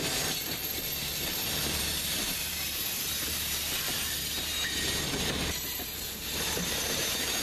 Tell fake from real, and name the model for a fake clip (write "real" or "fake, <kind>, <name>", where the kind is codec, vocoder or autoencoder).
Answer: fake, vocoder, BigVGAN v2